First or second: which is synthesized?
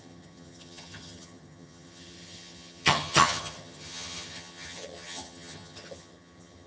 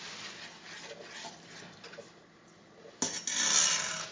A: first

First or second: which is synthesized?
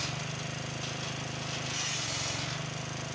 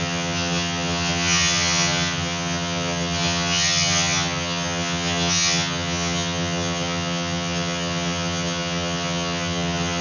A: second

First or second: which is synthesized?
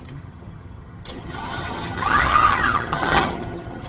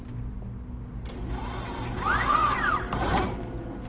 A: first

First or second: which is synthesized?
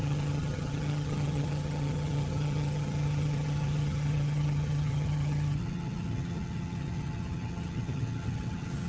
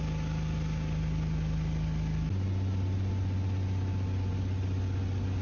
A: first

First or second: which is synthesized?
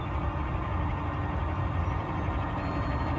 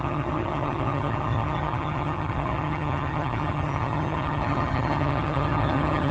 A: second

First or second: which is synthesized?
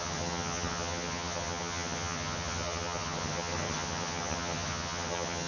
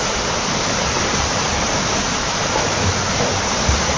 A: first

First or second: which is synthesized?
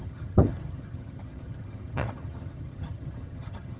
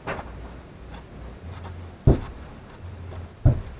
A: first